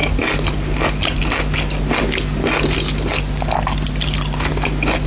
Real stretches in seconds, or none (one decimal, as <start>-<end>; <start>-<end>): 0.0-5.1

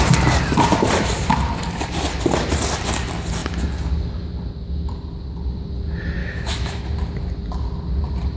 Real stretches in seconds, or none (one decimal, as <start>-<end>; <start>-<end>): 0.0-6.2; 6.8-8.4

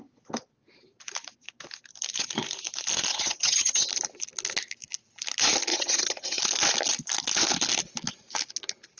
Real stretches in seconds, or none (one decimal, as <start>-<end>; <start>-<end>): 0.0-3.1; 3.9-5.7; 6.4-9.0

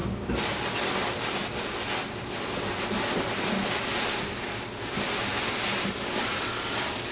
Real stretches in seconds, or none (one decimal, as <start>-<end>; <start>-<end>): 0.0-7.1

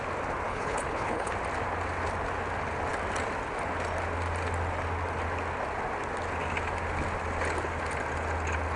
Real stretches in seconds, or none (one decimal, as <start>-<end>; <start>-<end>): 0.0-0.5; 1.3-8.8

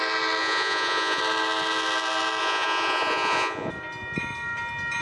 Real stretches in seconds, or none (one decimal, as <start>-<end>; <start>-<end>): 0.0-0.4; 1.2-2.4; 3.7-5.0

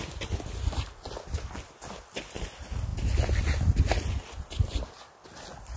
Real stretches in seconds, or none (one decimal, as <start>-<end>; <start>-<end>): 0.0-5.8

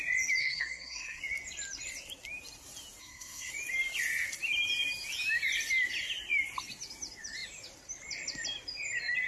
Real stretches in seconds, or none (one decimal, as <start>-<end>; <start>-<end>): 0.0-0.4; 1.2-3.0; 3.5-9.3